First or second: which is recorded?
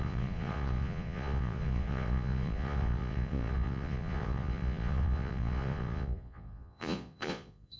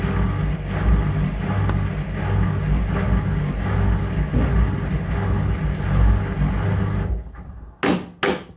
second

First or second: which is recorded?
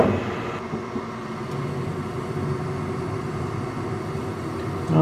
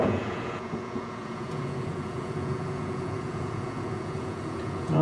first